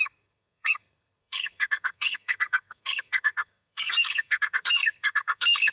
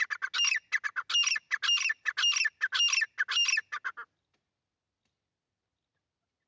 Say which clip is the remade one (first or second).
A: first